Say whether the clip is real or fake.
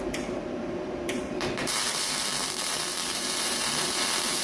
fake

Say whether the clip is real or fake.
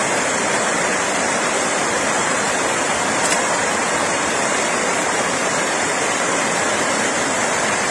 fake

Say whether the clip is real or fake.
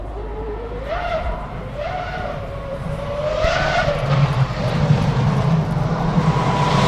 fake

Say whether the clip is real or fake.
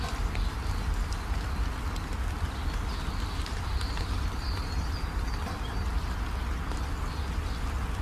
real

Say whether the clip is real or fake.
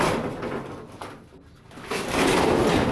real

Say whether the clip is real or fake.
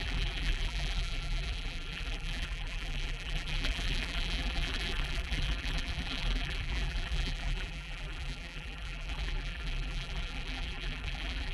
fake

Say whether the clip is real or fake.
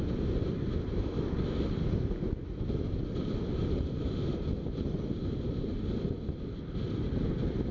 real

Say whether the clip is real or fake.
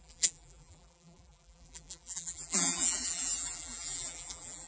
fake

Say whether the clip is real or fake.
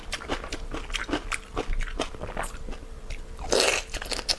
real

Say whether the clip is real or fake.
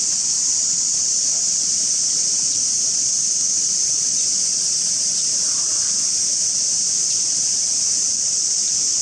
fake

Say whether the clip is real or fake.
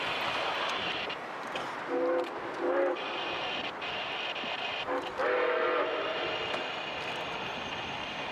real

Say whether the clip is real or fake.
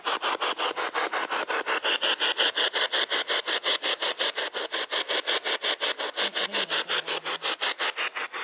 real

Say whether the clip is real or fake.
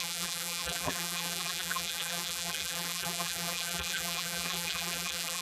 fake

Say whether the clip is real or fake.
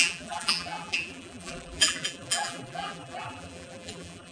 fake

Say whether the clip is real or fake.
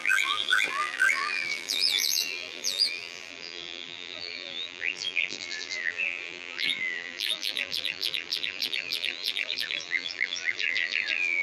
fake